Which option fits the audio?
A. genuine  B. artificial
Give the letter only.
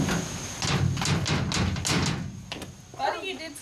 A